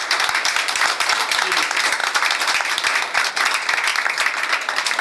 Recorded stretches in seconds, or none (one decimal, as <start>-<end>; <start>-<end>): 0.0-2.0; 3.3-3.9

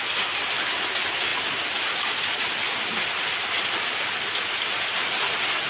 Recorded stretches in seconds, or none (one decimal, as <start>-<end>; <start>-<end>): 0.0-5.7